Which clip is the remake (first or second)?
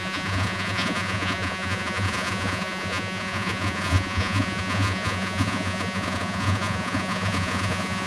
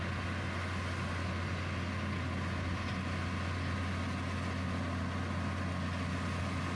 first